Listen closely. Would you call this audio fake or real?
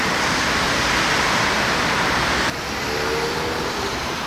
real